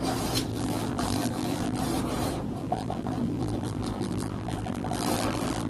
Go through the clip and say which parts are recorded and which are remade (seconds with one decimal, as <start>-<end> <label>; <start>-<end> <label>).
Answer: 0.0-0.5 recorded; 0.5-1.8 remade; 1.8-2.6 recorded; 2.6-5.7 remade